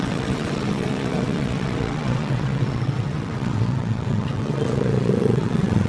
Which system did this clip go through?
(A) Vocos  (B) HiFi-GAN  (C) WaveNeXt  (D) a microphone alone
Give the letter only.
C